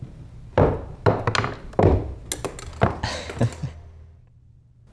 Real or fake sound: real